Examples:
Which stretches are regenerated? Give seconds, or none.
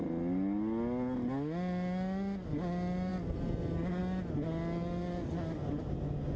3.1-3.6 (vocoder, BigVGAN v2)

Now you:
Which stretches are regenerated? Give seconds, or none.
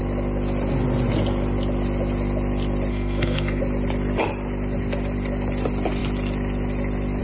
2.9-3.6 (codec, SNAC)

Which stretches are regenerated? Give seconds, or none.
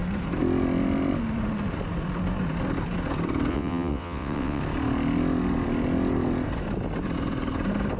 3.5-4.6 (vocoder, WaveNeXt)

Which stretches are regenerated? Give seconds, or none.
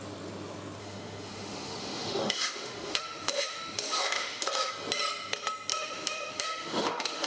0.8-4.7 (autoencoder, DAC-VAE); 5.7-7.3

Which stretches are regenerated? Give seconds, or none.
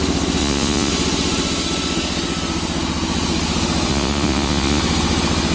0.4-0.9 (vocoder, Vocos); 3.9-4.8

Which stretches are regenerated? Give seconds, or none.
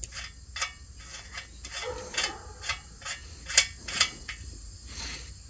3.8-5.0 (vocoder, Vocos)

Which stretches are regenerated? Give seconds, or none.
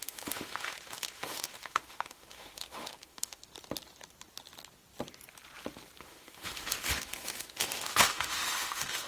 0.0-3.4 (autoencoder, DAC-VAE); 6.0-9.1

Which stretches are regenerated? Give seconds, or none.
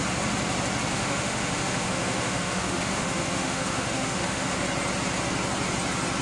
0.9-4.6 (autoencoder, DAC-VAE)